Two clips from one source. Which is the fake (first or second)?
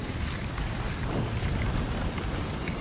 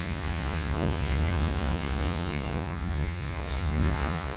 second